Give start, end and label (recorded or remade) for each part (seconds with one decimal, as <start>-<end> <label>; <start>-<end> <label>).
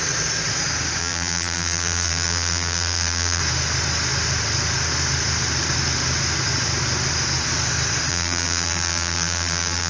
0.0-1.0 recorded; 1.0-3.4 remade; 3.4-8.1 recorded; 8.1-9.9 remade